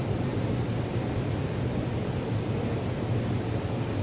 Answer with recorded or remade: recorded